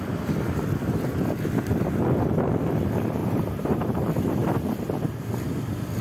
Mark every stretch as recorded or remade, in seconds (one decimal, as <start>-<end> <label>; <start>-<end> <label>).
0.0-3.2 recorded; 3.2-4.0 remade; 4.0-6.0 recorded